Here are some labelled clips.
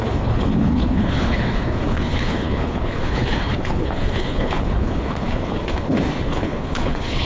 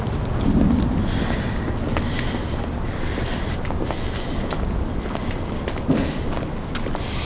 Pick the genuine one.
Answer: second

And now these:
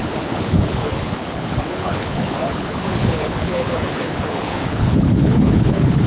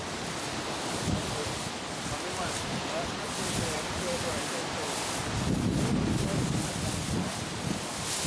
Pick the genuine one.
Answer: second